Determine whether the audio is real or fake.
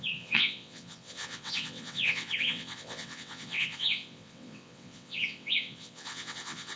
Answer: fake